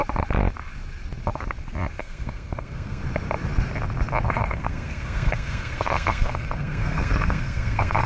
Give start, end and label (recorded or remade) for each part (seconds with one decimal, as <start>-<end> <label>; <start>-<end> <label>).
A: 0.0-2.0 recorded; 2.0-3.0 remade; 3.0-4.5 recorded; 4.5-8.1 remade